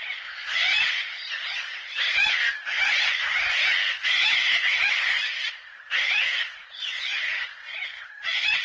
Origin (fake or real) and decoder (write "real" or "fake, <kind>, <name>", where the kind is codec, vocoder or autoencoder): real